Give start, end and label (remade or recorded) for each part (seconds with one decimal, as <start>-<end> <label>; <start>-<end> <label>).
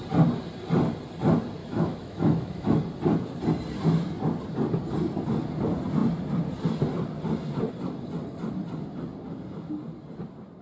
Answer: 0.0-1.6 recorded; 1.6-2.8 remade; 2.8-10.6 recorded